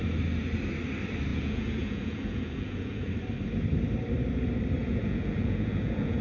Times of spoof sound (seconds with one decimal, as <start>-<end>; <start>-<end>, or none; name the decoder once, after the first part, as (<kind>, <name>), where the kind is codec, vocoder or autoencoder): 1.3-3.1 (vocoder, Vocos); 4.8-6.2